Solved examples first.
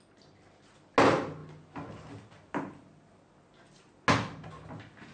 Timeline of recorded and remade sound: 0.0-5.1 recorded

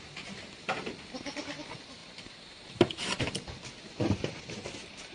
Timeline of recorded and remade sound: 0.0-5.1 recorded

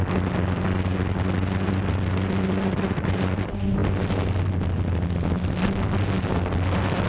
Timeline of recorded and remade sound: 0.0-7.1 recorded

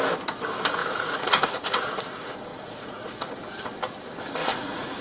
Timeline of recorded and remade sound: 0.0-0.8 recorded; 0.8-2.0 remade; 2.0-2.5 recorded; 2.5-3.3 remade; 3.3-4.4 recorded; 4.4-5.0 remade